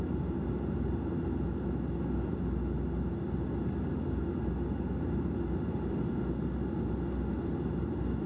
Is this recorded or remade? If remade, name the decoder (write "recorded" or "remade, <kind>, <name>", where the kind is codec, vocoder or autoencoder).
recorded